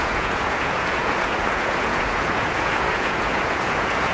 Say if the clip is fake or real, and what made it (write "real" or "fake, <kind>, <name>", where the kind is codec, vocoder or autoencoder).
fake, vocoder, Vocos